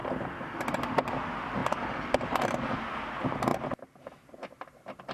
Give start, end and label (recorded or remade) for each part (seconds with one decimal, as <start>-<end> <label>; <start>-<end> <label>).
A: 0.0-5.1 recorded